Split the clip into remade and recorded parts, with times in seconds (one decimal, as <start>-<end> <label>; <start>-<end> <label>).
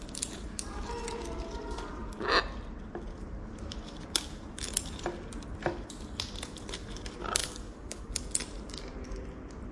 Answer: 0.0-7.4 recorded; 7.4-8.1 remade; 8.1-9.7 recorded